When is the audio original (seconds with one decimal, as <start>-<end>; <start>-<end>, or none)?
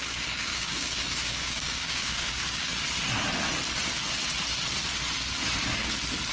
2.7-6.3